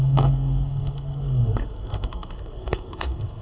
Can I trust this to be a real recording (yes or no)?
no